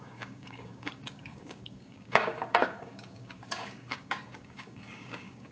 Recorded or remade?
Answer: remade